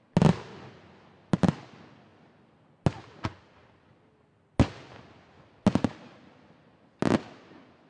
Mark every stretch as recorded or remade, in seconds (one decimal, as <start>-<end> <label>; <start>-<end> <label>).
0.0-7.9 recorded